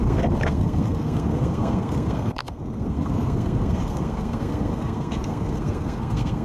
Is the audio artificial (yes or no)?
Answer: yes